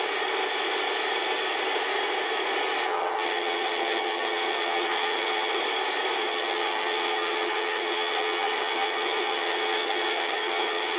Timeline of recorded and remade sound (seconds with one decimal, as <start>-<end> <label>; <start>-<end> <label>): 0.0-2.9 recorded; 2.9-5.6 remade; 5.6-6.2 recorded; 6.2-11.0 remade